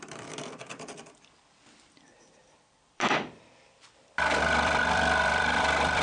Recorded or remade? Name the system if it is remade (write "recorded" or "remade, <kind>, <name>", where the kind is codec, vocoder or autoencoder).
remade, vocoder, BigVGAN v2